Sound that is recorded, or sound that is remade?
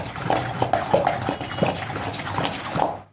recorded